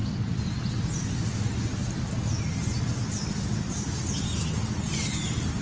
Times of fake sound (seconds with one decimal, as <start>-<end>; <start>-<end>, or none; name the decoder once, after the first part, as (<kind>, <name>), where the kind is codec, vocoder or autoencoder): none